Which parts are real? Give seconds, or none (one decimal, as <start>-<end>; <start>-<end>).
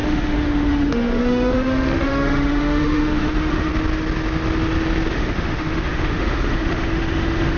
3.7-5.1